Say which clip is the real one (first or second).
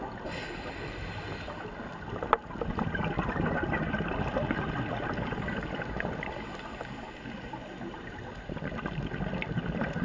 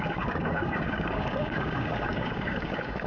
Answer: first